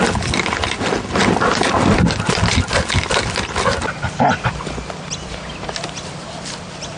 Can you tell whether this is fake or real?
real